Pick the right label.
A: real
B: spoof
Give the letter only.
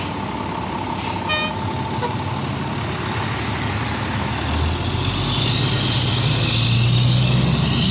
A